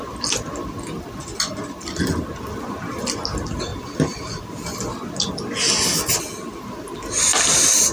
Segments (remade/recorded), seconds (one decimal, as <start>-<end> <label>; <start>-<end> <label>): 0.0-3.7 recorded; 3.7-4.4 remade; 4.4-7.9 recorded